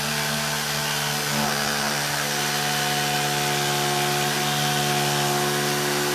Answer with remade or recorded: recorded